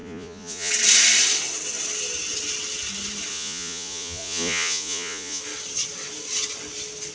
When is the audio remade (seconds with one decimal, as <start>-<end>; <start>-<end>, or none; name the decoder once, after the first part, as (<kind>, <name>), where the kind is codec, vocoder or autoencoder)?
0.0-0.7 (vocoder, Vocos); 3.3-5.4